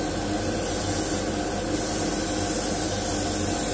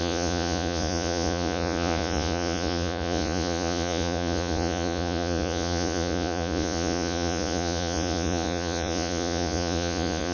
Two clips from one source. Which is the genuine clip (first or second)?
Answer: first